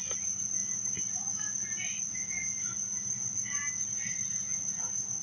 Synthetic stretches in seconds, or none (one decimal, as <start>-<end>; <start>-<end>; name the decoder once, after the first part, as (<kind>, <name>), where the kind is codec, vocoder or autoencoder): none

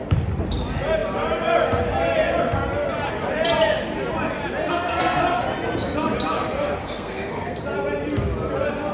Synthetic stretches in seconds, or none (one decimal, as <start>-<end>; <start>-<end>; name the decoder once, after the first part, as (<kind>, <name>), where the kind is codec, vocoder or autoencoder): 4.7-5.2 (codec, SNAC); 6.8-7.6